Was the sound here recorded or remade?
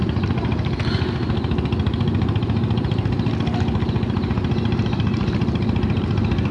recorded